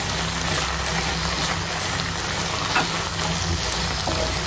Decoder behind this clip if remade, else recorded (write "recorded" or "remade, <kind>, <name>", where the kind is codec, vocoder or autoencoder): recorded